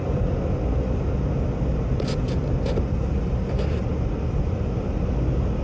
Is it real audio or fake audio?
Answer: real